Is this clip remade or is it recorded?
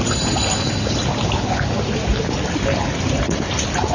recorded